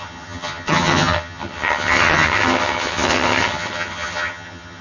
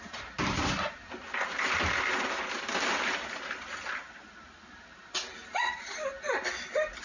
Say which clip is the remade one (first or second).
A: first